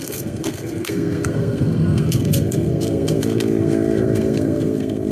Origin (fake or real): fake